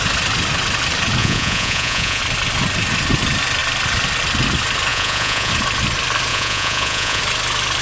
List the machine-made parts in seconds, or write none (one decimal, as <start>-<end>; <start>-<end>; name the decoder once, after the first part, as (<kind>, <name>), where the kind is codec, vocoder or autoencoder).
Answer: 1.2-2.2 (vocoder, Vocos); 4.9-5.5; 6.3-7.2